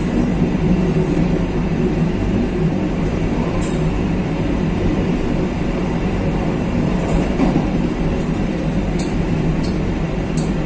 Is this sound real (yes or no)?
no